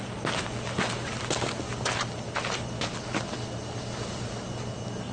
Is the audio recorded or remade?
recorded